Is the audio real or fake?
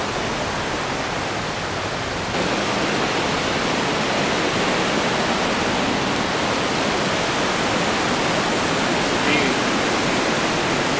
real